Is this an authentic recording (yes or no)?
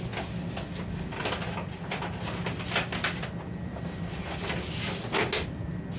yes